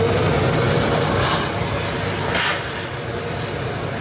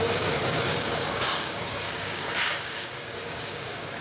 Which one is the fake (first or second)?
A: second